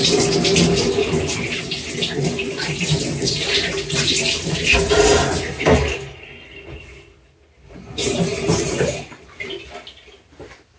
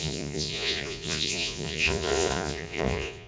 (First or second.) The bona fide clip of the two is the first